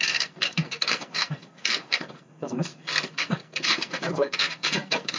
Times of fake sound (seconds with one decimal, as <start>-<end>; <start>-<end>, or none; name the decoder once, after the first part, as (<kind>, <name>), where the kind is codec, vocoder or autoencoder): 0.0-5.2 (codec, SNAC)